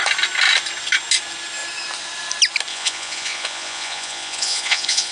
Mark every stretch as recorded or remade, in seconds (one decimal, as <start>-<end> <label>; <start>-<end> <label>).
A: 0.0-2.7 recorded; 2.7-5.1 remade